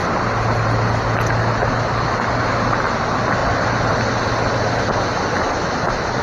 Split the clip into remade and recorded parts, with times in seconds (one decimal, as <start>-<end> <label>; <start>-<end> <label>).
0.0-3.4 recorded; 3.4-4.3 remade; 4.3-6.2 recorded